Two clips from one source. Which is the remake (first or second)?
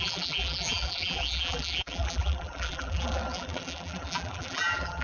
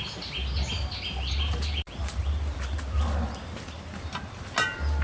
first